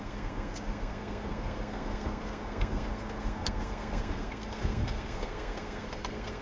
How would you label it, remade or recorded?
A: remade